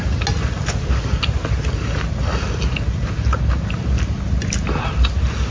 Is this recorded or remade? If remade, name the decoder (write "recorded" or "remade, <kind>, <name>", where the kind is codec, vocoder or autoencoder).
recorded